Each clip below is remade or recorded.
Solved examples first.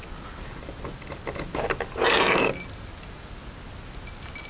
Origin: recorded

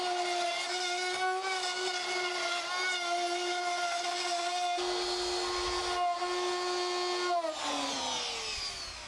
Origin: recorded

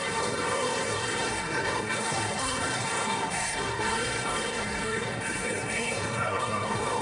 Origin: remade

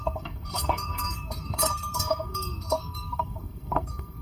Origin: remade